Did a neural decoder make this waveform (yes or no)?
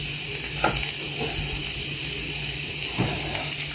no